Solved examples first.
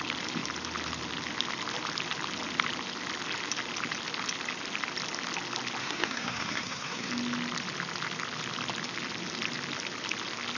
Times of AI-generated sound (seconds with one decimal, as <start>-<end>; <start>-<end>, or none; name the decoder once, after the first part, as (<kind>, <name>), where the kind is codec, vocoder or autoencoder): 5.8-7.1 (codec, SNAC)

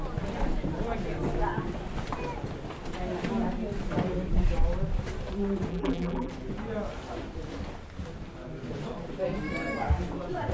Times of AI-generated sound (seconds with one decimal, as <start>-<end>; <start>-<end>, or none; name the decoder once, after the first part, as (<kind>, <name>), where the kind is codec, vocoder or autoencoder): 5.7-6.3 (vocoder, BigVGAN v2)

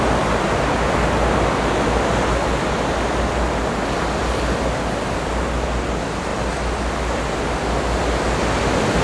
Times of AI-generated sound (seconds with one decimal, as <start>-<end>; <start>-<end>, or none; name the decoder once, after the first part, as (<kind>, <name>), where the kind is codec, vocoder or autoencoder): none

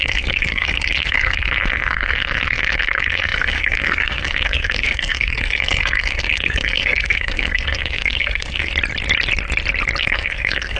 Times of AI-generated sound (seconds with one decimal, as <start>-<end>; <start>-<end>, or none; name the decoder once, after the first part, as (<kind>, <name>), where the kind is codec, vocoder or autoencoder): 0.0-8.7 (codec, SNAC); 10.0-10.8